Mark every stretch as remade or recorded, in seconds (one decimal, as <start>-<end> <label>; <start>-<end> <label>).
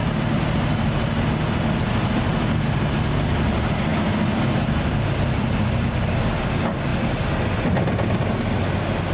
0.0-9.1 recorded